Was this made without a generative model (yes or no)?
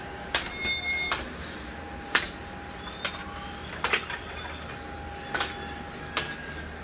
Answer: yes